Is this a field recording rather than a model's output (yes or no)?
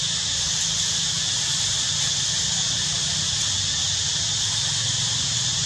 yes